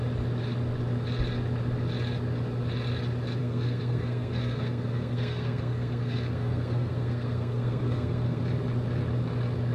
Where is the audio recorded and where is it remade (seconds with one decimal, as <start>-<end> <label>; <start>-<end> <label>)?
0.0-3.4 recorded; 3.4-8.4 remade; 8.4-9.7 recorded

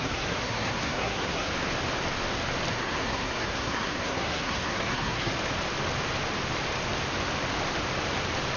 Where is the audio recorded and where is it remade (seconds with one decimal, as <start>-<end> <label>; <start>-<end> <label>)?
0.0-1.5 remade; 1.5-2.7 recorded; 2.7-5.3 remade; 5.3-8.6 recorded

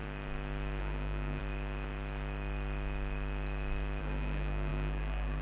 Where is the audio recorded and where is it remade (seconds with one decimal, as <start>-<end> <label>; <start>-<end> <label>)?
0.0-0.8 recorded; 0.8-1.4 remade; 1.4-4.0 recorded; 4.0-5.4 remade

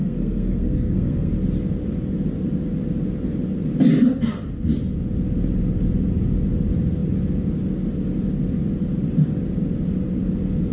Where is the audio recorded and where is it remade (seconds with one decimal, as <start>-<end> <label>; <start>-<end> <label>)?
0.0-1.3 remade; 1.3-10.7 recorded

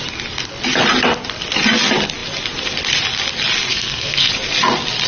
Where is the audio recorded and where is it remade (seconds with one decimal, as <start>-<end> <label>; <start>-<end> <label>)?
0.0-3.7 recorded; 3.7-4.3 remade; 4.3-5.1 recorded

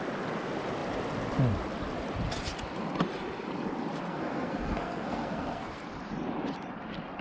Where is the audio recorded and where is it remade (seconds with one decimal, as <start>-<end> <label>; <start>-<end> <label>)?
0.0-4.1 recorded; 4.1-5.8 remade; 5.8-7.2 recorded

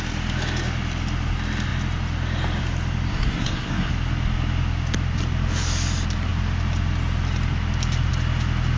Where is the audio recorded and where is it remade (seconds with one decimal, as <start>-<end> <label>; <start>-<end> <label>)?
0.0-3.1 recorded; 3.1-3.9 remade; 3.9-8.8 recorded

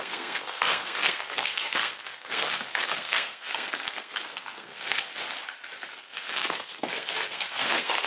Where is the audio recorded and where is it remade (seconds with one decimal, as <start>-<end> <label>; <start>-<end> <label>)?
0.0-5.1 remade; 5.1-6.0 recorded; 6.0-8.1 remade